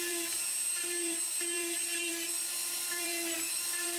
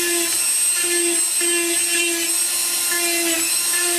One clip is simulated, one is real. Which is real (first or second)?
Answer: second